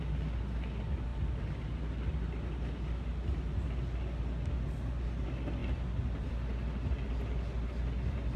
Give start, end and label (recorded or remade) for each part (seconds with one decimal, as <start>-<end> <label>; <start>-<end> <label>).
0.0-8.4 recorded

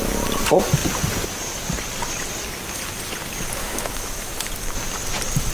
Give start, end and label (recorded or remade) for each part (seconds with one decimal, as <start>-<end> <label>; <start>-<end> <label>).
0.0-3.6 recorded; 3.6-4.5 remade; 4.5-5.5 recorded

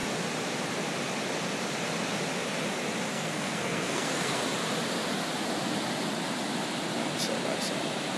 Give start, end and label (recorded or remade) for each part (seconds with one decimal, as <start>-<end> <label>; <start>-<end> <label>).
0.0-3.1 recorded; 3.1-4.4 remade; 4.4-8.2 recorded